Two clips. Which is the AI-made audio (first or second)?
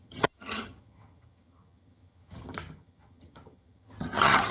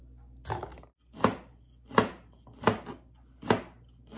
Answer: first